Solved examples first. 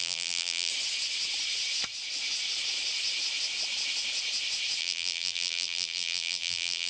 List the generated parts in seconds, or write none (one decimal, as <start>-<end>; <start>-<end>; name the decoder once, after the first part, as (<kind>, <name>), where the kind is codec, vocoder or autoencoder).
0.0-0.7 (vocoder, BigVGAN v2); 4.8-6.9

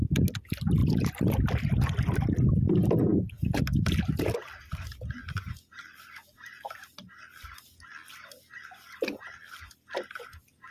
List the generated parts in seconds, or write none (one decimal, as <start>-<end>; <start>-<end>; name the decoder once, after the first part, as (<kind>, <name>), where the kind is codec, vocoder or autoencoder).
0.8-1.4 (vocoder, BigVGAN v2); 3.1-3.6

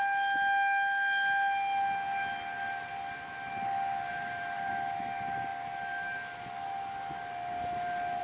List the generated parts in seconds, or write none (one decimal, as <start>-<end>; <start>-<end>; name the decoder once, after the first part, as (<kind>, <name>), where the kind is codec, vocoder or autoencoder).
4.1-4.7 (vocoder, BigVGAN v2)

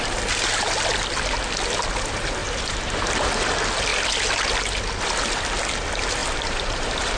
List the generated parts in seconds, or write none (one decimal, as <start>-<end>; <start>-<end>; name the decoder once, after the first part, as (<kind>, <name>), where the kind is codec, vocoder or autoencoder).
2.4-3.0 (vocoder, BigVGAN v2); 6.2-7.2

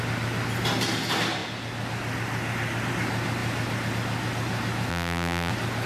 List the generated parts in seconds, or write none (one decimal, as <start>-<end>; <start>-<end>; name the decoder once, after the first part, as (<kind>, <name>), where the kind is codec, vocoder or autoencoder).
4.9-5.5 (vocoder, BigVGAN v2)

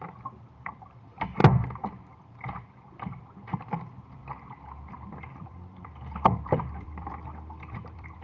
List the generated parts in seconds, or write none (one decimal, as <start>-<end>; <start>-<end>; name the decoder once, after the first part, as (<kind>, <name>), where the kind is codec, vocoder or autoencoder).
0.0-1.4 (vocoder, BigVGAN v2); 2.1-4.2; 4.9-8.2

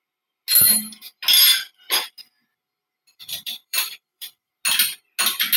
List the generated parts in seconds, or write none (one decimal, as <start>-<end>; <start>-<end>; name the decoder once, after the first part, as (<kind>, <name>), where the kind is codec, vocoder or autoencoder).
3.1-4.5 (vocoder, BigVGAN v2)